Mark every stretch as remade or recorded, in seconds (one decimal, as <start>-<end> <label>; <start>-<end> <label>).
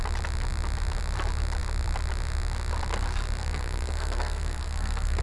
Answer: 0.0-3.4 recorded; 3.4-5.2 remade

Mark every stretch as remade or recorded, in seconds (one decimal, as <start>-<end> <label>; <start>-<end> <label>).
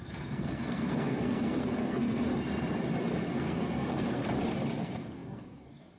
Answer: 0.0-2.3 remade; 2.3-3.3 recorded; 3.3-4.2 remade; 4.2-4.8 recorded; 4.8-6.0 remade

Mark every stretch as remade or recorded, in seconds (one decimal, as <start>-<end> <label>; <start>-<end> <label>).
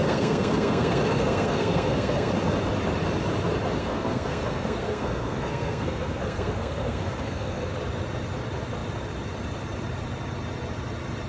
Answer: 0.0-2.3 remade; 2.3-3.8 recorded; 3.8-7.7 remade; 7.7-11.3 recorded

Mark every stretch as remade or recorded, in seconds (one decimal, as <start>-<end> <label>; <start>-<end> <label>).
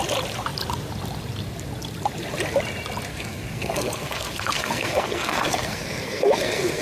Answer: 0.0-3.1 recorded; 3.1-6.8 remade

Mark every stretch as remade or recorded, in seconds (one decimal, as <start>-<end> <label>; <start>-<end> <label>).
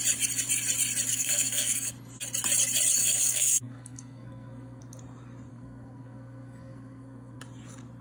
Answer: 0.0-1.1 recorded; 1.1-1.9 remade; 1.9-3.0 recorded; 3.0-4.8 remade; 4.8-5.5 recorded; 5.5-7.4 remade; 7.4-8.0 recorded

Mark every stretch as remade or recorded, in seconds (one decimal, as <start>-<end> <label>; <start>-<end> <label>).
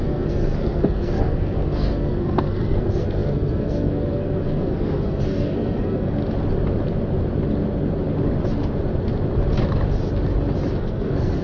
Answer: 0.0-6.2 remade; 6.2-10.8 recorded; 10.8-11.4 remade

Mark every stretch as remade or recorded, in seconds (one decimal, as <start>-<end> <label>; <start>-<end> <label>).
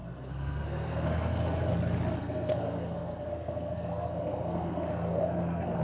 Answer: 0.0-1.7 remade; 1.7-2.2 recorded; 2.2-5.8 remade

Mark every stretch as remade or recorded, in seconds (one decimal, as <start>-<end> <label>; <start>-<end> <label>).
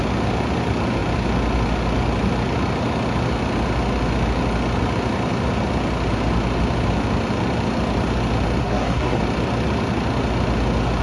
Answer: 0.0-8.6 recorded; 8.6-9.2 remade; 9.2-11.0 recorded